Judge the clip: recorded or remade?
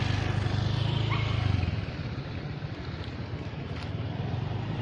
recorded